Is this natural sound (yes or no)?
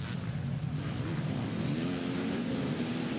yes